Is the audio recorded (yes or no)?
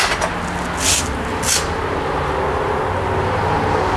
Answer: yes